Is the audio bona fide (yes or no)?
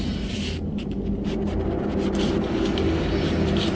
yes